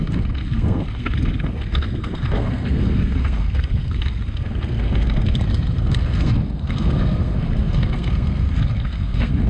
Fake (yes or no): yes